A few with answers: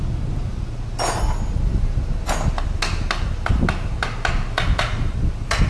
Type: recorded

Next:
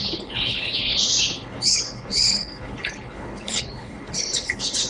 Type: remade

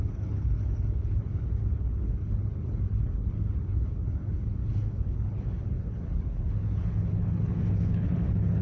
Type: remade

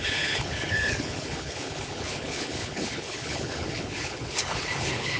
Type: remade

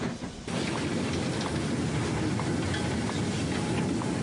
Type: recorded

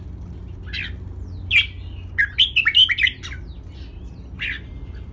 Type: recorded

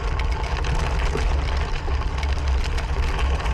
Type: recorded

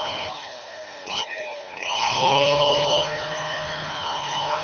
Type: remade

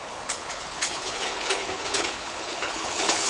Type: remade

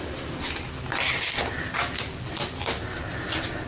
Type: recorded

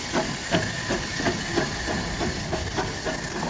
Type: recorded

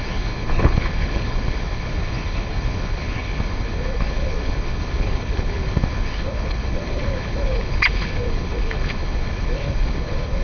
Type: remade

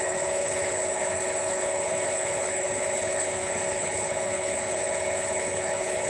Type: remade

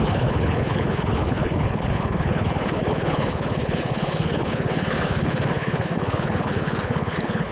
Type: remade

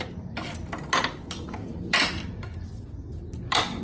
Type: recorded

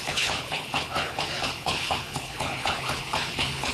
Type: remade